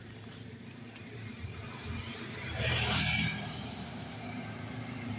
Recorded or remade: remade